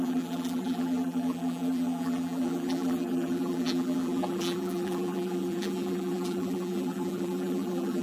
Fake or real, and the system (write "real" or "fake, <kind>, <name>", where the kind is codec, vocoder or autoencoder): fake, vocoder, BigVGAN v2